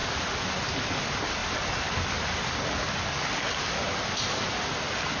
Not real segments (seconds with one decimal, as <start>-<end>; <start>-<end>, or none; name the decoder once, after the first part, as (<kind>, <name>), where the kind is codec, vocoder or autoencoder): none

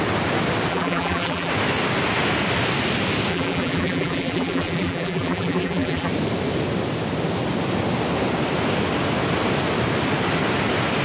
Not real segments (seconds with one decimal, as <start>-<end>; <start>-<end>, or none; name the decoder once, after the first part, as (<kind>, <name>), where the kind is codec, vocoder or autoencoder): 0.7-1.5 (vocoder, BigVGAN v2); 3.3-6.1

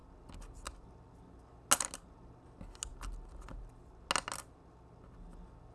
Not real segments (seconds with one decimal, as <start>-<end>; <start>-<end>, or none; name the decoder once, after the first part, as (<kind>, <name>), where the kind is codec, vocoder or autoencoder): none

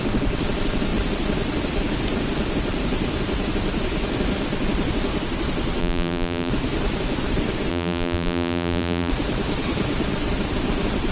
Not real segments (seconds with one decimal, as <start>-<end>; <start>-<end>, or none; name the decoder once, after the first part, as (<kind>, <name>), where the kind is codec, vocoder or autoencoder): 5.8-6.5 (vocoder, BigVGAN v2); 7.7-9.1

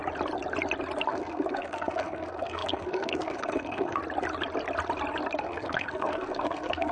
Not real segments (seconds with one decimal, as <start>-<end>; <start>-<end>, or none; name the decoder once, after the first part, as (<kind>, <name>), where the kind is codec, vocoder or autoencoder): 1.1-4.0 (codec, SNAC); 5.4-6.9

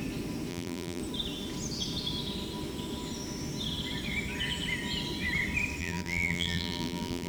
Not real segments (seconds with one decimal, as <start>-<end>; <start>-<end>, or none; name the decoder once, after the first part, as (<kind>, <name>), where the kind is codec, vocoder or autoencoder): 0.5-1.0 (vocoder, BigVGAN v2); 5.8-7.3

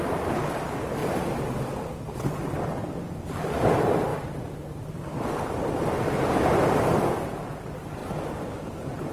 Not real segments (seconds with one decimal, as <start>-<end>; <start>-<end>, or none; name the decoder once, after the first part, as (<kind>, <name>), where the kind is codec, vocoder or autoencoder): 1.0-2.3 (vocoder, BigVGAN v2); 4.1-6.3

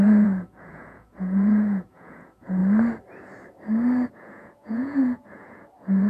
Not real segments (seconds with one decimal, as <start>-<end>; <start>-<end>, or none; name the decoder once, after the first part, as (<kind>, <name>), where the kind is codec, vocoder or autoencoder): 0.0-2.6 (vocoder, Vocos); 4.1-6.1